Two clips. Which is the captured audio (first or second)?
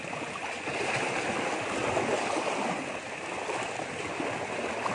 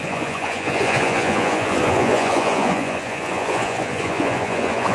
first